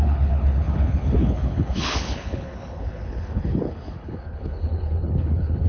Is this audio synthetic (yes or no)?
yes